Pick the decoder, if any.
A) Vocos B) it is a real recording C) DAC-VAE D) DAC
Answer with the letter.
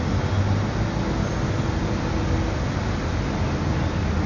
B